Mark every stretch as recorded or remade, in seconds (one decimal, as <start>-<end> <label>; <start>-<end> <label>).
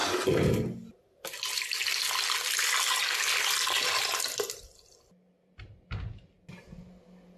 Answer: 0.0-7.4 recorded